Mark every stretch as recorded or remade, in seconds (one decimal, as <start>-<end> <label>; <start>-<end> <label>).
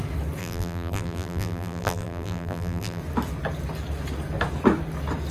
0.0-0.4 recorded; 0.4-3.0 remade; 3.0-5.3 recorded